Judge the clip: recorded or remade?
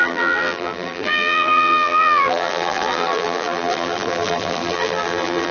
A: remade